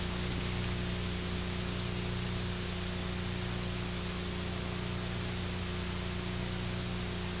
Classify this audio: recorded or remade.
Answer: recorded